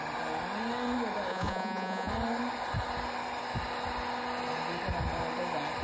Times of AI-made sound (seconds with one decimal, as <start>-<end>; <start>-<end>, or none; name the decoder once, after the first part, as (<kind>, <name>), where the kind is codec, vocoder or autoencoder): 1.3-2.1 (vocoder, Vocos)